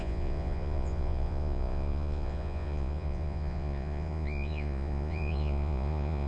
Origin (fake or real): fake